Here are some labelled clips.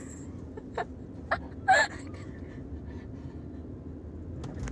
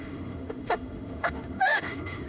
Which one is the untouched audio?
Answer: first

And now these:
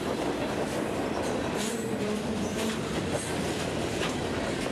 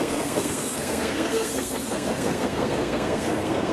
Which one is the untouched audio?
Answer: first